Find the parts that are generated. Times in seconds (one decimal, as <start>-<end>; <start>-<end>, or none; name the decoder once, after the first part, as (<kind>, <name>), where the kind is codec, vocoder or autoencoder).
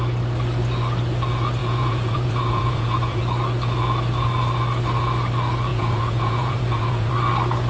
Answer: 1.6-3.2 (vocoder, Vocos); 5.7-7.1